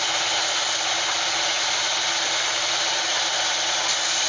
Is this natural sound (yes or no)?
yes